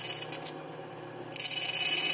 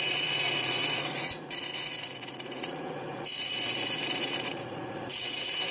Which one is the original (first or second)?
first